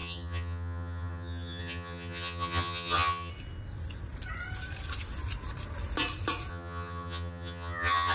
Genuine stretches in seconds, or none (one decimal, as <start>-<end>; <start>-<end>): 3.3-6.5